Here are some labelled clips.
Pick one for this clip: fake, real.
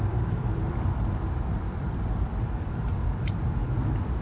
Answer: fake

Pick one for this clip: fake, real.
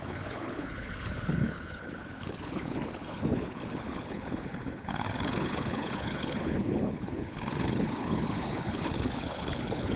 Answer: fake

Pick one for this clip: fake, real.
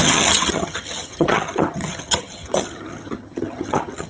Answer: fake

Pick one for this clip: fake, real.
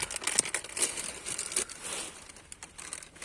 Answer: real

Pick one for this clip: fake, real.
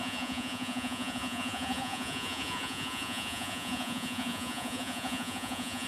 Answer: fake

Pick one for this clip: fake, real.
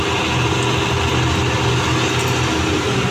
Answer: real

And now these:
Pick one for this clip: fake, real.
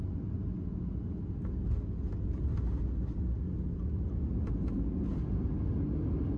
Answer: real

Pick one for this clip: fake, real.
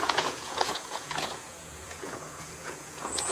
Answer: fake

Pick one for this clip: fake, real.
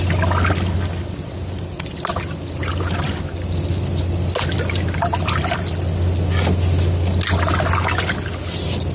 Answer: real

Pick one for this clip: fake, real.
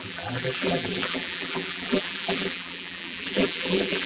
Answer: fake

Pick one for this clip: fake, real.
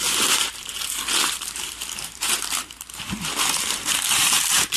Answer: fake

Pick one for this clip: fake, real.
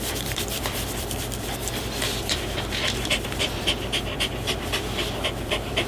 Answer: fake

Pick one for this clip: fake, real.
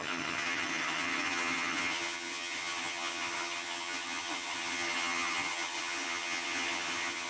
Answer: fake